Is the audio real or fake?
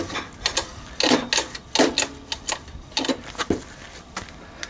real